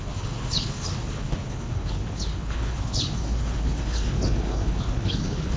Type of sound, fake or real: fake